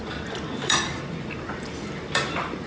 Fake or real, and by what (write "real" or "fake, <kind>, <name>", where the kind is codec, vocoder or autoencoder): fake, vocoder, BigVGAN v2